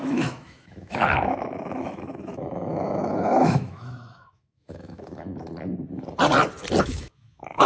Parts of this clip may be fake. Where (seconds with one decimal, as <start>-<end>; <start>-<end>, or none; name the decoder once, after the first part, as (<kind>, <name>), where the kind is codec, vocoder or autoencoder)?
0.0-5.3 (autoencoder, DAC-VAE); 6.8-7.7